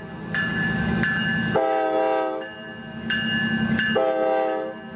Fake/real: real